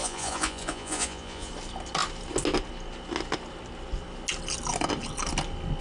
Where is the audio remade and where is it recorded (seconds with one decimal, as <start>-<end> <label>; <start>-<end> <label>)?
0.0-1.5 remade; 1.5-5.8 recorded